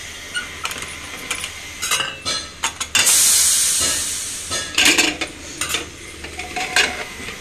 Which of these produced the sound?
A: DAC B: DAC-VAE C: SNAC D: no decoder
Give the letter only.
D